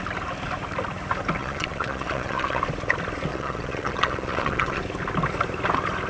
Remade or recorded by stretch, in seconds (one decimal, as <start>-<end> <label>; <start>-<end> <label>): 0.0-1.4 recorded; 1.4-2.6 remade; 2.6-3.3 recorded; 3.3-4.8 remade; 4.8-6.1 recorded